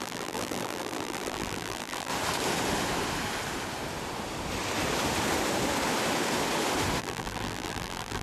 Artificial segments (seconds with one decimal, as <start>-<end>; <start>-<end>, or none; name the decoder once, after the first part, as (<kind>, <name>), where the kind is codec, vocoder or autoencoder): 0.0-2.1 (vocoder, BigVGAN v2); 7.0-8.2